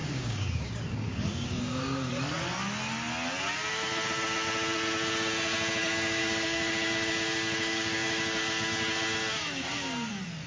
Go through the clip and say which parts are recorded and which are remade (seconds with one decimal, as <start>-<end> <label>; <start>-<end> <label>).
0.0-2.1 remade; 2.1-5.8 recorded; 5.8-10.1 remade; 10.1-10.5 recorded